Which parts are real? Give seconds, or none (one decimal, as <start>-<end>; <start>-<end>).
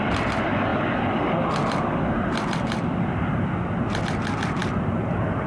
none